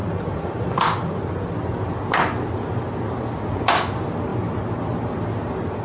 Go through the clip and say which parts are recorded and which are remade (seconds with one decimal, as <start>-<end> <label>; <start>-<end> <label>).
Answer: 0.0-3.5 remade; 3.5-5.8 recorded